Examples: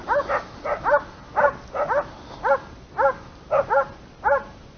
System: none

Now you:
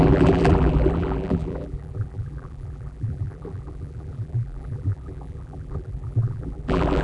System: vocoder, BigVGAN v2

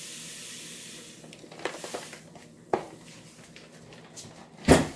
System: none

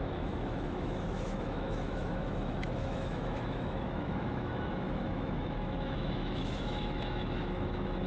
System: autoencoder, DAC-VAE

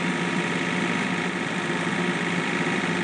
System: none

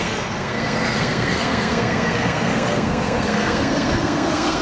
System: codec, SNAC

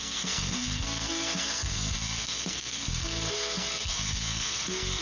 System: codec, SNAC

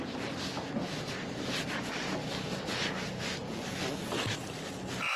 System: none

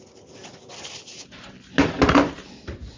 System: none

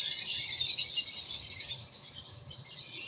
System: none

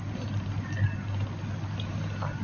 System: none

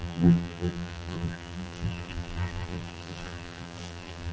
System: vocoder, BigVGAN v2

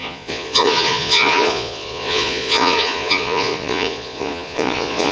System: vocoder, Vocos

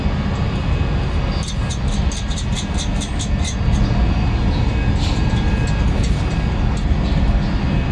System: none